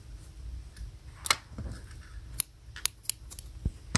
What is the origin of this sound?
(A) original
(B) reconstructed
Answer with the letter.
A